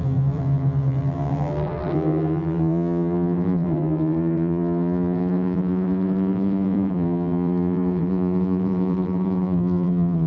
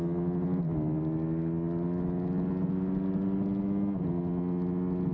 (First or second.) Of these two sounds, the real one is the second